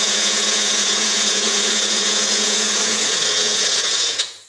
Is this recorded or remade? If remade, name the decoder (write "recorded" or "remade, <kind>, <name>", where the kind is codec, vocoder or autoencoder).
remade, vocoder, Vocos